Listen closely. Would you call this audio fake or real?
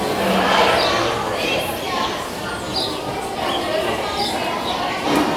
fake